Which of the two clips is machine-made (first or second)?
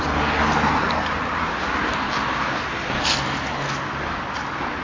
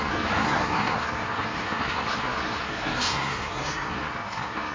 second